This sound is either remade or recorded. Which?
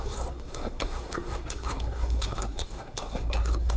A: remade